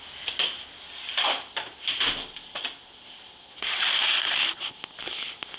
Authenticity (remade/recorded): recorded